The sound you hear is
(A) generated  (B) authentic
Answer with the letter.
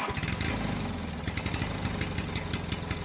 B